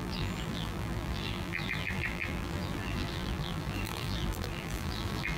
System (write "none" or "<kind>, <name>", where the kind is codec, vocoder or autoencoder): vocoder, BigVGAN v2